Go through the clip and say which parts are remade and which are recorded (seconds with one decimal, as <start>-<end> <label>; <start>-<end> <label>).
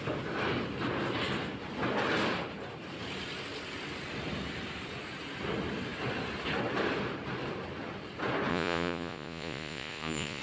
0.0-8.5 recorded; 8.5-10.4 remade